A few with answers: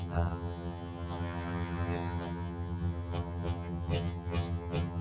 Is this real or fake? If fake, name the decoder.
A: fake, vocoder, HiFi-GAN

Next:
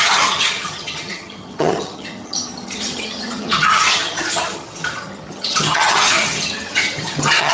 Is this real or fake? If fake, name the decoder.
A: fake, vocoder, HiFi-GAN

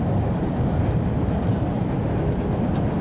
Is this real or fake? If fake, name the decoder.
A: real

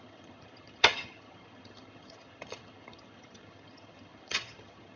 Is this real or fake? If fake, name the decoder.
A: fake, vocoder, HiFi-GAN